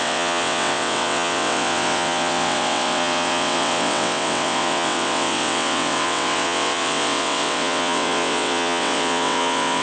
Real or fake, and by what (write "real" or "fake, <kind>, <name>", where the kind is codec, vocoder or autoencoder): fake, vocoder, WaveNeXt